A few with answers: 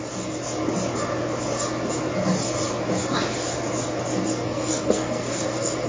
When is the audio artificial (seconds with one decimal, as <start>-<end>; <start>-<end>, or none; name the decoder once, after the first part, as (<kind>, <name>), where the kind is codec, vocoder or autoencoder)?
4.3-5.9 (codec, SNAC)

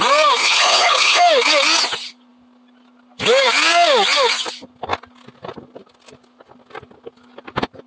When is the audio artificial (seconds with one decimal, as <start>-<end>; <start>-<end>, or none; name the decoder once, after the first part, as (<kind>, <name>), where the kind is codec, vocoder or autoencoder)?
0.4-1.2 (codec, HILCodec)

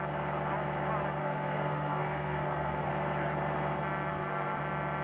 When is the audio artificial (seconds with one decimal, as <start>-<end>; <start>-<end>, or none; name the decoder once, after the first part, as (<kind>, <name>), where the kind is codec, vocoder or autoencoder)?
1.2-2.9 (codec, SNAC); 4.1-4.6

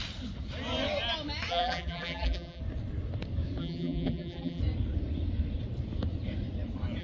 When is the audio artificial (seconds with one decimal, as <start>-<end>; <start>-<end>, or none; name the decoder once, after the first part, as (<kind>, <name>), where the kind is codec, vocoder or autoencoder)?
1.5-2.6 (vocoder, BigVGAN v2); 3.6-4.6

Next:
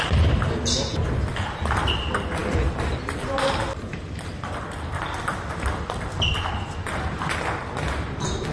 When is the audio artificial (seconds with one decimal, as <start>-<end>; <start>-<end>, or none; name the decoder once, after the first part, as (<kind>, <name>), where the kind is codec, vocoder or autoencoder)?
none

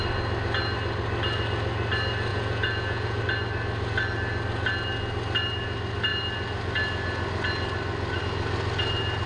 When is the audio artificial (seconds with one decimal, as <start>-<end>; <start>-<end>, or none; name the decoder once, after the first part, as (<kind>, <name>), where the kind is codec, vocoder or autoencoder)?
2.3-3.2 (vocoder, Vocos)

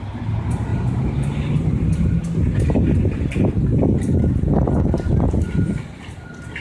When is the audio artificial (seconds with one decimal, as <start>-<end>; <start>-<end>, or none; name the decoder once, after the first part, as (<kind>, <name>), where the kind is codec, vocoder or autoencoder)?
none